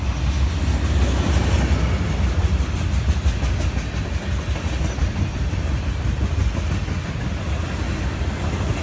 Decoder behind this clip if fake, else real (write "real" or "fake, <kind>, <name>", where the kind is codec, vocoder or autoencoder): real